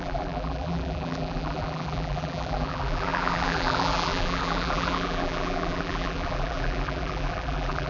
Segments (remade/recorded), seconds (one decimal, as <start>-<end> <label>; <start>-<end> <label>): 0.0-7.9 remade